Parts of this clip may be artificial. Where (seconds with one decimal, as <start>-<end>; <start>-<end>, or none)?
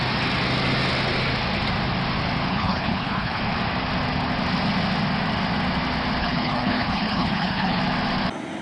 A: 2.5-3.4; 6.2-7.8